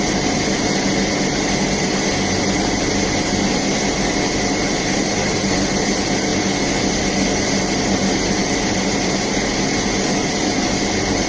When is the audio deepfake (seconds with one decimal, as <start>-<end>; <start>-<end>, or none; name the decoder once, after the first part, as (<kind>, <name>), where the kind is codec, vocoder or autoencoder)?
none